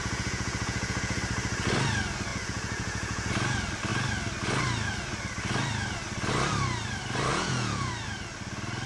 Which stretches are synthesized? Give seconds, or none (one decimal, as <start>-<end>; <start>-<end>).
0.0-1.2; 2.3-3.3; 7.3-7.9

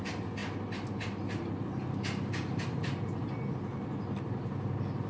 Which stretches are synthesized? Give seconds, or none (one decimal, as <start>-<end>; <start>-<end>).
none

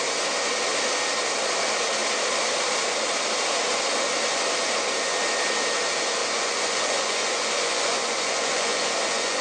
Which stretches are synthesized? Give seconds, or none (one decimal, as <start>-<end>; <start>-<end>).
6.2-9.4

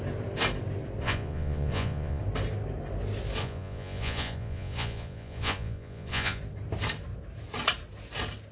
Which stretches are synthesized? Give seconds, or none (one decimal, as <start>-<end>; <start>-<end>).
1.0-2.2; 3.4-6.4

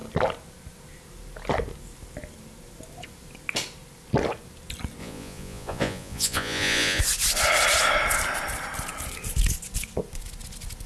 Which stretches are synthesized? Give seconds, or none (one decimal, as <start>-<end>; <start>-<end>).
5.0-7.0